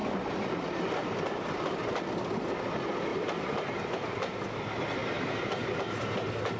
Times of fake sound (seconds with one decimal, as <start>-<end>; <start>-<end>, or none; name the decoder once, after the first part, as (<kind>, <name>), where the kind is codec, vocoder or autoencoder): none